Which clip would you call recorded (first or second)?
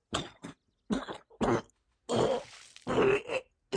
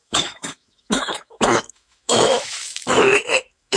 first